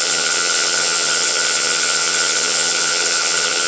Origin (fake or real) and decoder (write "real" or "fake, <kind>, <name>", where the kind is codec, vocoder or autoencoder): fake, vocoder, HiFi-GAN